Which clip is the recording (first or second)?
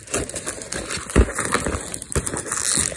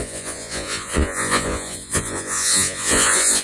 first